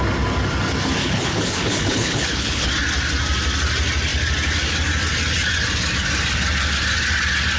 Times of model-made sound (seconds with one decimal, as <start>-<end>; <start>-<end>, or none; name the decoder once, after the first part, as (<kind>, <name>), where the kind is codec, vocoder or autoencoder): 1.0-2.7 (codec, HILCodec)